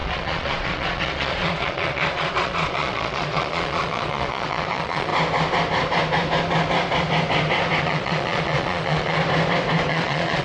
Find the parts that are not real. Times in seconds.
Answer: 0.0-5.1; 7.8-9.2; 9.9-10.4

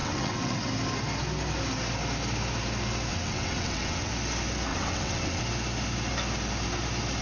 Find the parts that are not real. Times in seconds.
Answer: 0.0-0.7; 3.1-4.1; 4.7-5.4

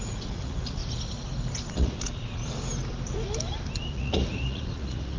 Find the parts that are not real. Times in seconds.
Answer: 0.0-0.8; 1.7-2.4; 3.9-5.2

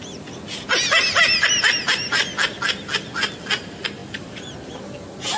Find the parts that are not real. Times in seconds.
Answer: none

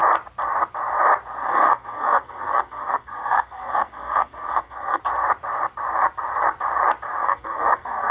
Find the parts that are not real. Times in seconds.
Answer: 1.5-5.0; 7.2-8.1

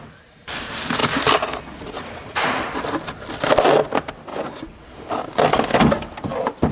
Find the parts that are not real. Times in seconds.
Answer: none

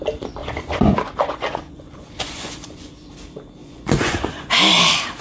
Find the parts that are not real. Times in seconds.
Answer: 0.4-2.9; 3.6-4.5